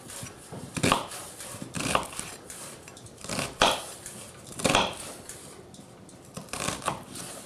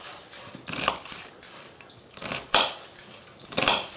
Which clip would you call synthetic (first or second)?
first